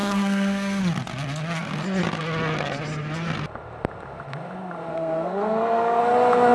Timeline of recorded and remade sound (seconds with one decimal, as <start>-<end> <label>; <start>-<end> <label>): 0.0-0.8 remade; 0.8-4.9 recorded; 4.9-6.0 remade; 6.0-6.5 recorded